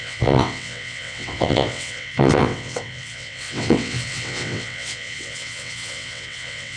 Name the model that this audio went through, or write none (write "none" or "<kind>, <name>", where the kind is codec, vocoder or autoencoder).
vocoder, WaveNeXt